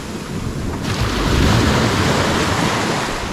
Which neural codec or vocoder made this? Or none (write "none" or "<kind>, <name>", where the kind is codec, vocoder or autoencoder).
none